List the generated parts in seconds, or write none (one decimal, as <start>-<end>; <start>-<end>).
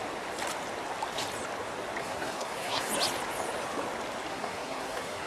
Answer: 2.0-2.9; 4.3-5.3